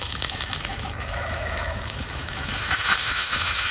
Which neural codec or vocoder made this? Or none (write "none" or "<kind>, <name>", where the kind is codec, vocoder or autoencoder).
autoencoder, DAC-VAE